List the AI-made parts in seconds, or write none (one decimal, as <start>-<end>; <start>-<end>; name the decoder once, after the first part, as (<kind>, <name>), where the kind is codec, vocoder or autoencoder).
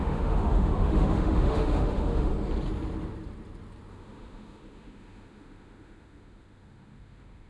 0.0-2.3 (autoencoder, DAC-VAE); 3.9-7.5